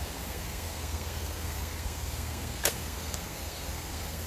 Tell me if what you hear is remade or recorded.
remade